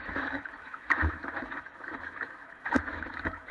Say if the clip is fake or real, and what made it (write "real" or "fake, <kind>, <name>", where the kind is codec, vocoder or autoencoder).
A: fake, autoencoder, DAC-VAE